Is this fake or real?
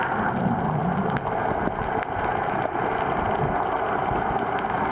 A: real